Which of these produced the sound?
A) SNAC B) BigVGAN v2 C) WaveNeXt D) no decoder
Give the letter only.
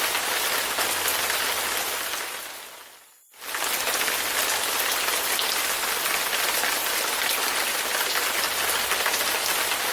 D